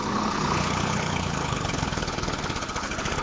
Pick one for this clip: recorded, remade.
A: remade